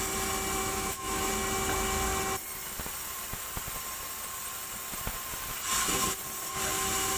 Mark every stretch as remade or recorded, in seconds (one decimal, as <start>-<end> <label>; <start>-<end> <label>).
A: 0.0-0.6 recorded; 0.6-1.3 remade; 1.3-7.2 recorded